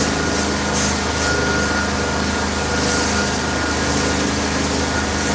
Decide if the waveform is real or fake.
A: real